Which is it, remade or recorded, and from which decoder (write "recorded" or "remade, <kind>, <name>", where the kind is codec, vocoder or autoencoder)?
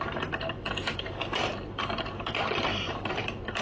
remade, vocoder, BigVGAN v2